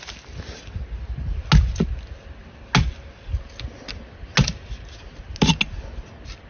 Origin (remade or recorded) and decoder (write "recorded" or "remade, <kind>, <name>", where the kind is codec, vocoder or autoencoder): recorded